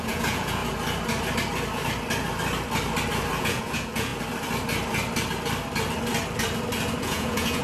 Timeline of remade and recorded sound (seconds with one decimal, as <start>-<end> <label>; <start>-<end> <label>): 0.0-0.6 remade; 0.6-3.4 recorded; 3.4-4.1 remade; 4.1-7.0 recorded; 7.0-7.6 remade